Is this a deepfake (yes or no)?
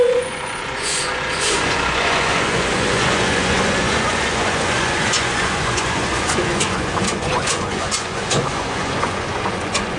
yes